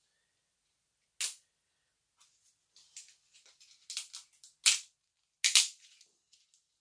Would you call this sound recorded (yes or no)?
yes